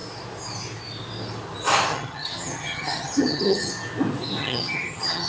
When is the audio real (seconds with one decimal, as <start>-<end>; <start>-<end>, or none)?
0.0-1.9; 3.7-4.4